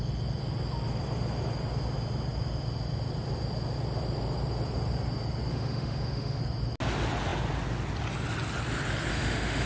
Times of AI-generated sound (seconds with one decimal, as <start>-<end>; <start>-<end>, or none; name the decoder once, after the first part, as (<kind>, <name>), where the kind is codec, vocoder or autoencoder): 5.5-6.4 (autoencoder, DAC-VAE); 9.1-9.7